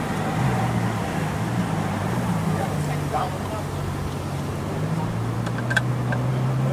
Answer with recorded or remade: recorded